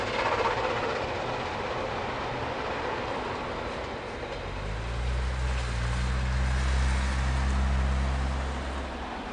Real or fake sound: real